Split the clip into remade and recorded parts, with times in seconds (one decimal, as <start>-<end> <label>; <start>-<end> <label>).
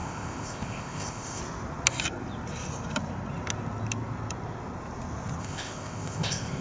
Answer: 0.0-1.4 remade; 1.4-5.4 recorded; 5.4-6.6 remade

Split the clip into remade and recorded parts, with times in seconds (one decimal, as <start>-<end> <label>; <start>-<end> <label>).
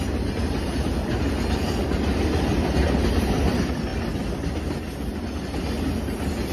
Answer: 0.0-6.5 recorded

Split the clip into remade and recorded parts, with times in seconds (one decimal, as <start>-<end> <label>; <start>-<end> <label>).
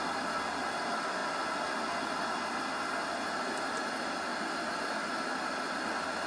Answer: 0.0-6.3 recorded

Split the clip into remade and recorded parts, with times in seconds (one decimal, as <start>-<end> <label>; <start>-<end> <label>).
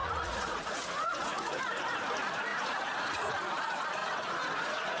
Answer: 0.0-1.8 remade; 1.8-2.5 recorded; 2.5-3.3 remade; 3.3-4.0 recorded; 4.0-5.0 remade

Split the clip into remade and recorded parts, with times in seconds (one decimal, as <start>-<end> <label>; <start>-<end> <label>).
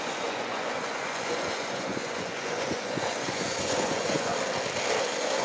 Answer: 0.0-4.3 remade; 4.3-5.0 recorded; 5.0-5.4 remade